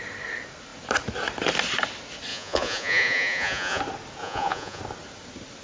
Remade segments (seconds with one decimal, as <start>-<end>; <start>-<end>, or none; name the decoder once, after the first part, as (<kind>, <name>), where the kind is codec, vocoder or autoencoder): 2.3-3.8 (vocoder, Vocos); 4.2-4.8